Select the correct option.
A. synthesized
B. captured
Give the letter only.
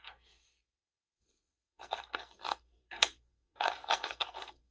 A